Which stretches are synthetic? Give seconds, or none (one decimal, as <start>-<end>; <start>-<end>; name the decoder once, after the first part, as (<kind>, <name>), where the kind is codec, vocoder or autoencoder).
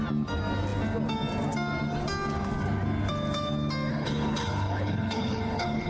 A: 3.9-5.9 (codec, HILCodec)